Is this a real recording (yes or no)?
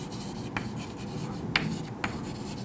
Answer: yes